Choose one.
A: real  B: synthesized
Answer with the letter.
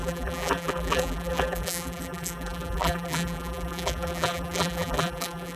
B